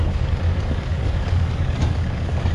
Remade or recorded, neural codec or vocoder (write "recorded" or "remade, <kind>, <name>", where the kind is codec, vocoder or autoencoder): remade, codec, DAC